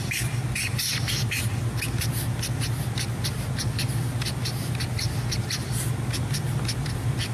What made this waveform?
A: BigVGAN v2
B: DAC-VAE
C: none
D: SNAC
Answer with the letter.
C